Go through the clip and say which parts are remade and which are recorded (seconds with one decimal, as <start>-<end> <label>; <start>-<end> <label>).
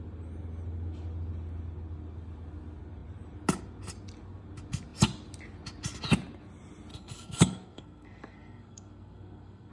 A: 0.0-6.9 recorded; 6.9-9.7 remade